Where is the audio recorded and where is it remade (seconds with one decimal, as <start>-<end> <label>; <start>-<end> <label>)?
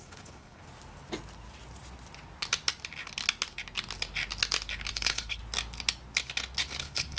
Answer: 0.0-0.6 remade; 0.6-4.9 recorded; 4.9-5.4 remade; 5.4-6.8 recorded; 6.8-7.2 remade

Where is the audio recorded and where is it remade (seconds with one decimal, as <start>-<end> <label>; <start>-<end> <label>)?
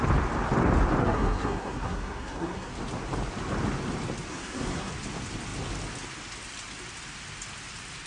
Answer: 0.0-1.0 recorded; 1.0-2.7 remade; 2.7-4.3 recorded; 4.3-4.9 remade; 4.9-8.1 recorded